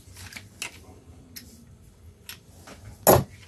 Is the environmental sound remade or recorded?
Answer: recorded